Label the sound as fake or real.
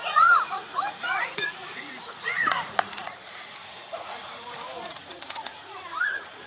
fake